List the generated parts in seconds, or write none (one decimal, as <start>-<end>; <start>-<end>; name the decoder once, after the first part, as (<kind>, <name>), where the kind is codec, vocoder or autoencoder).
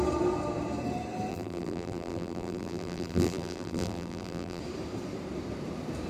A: 1.3-4.6 (vocoder, BigVGAN v2)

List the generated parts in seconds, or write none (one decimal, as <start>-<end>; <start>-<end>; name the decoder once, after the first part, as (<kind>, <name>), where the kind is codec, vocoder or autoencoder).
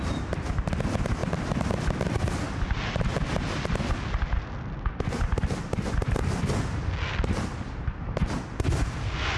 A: none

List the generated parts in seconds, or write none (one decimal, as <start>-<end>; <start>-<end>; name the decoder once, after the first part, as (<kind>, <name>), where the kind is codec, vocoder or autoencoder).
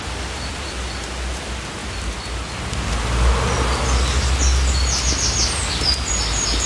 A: none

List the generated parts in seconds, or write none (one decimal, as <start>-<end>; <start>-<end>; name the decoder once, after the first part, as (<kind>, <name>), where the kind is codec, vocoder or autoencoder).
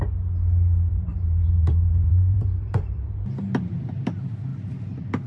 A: 0.9-3.1 (vocoder, BigVGAN v2)